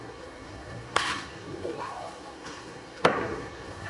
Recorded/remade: remade